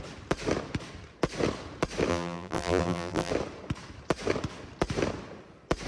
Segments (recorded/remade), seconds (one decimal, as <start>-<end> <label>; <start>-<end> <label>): 0.0-2.1 recorded; 2.1-3.3 remade; 3.3-5.9 recorded